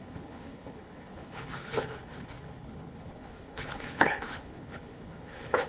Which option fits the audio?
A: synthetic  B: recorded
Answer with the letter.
A